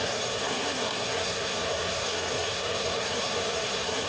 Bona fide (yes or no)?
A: no